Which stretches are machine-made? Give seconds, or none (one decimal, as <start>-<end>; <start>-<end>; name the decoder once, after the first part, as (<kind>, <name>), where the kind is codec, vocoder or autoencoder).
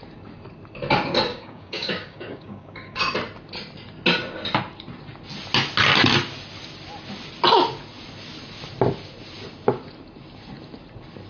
1.3-3.0 (codec, DAC)